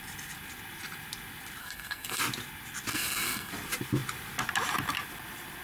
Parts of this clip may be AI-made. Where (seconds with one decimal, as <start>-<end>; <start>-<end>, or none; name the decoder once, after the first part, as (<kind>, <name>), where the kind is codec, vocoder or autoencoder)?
1.6-2.2 (codec, SNAC); 2.9-3.5